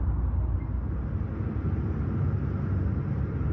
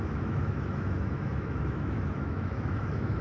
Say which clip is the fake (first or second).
second